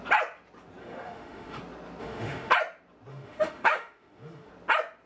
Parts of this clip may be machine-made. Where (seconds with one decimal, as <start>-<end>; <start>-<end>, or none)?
0.8-1.6; 2.0-2.5; 3.1-4.5